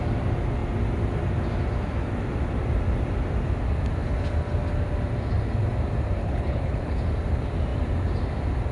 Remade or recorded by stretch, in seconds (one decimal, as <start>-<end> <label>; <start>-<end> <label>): 0.0-6.2 recorded; 6.2-7.0 remade; 7.0-8.7 recorded